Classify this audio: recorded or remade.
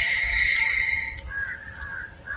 recorded